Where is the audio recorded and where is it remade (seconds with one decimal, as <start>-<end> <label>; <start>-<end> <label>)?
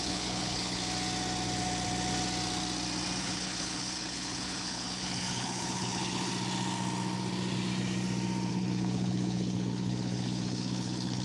0.0-0.8 remade; 0.8-3.2 recorded; 3.2-6.3 remade; 6.3-8.5 recorded; 8.5-11.2 remade